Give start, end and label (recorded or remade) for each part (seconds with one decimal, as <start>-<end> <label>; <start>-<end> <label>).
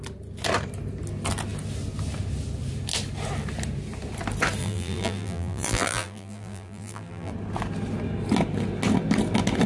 0.0-4.6 recorded; 4.6-7.3 remade; 7.3-9.7 recorded